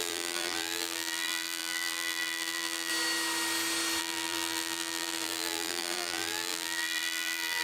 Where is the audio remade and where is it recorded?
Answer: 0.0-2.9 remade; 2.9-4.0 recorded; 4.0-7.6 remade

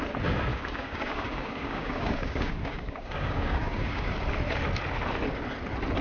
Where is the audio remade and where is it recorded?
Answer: 0.0-0.5 recorded; 0.5-4.1 remade; 4.1-6.0 recorded

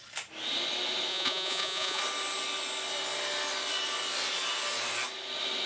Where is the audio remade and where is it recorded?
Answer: 0.0-1.1 recorded; 1.1-2.0 remade; 2.0-5.7 recorded

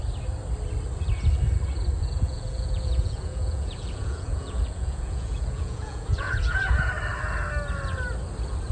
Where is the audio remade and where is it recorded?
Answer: 0.0-2.0 recorded; 2.0-6.9 remade; 6.9-8.7 recorded